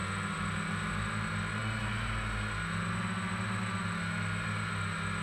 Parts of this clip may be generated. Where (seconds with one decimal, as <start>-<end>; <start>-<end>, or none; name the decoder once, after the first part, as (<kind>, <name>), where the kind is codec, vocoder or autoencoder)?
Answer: none